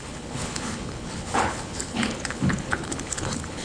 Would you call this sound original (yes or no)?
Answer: no